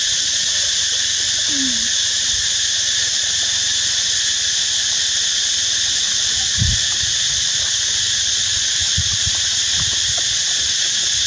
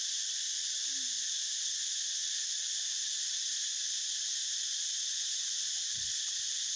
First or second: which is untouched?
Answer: first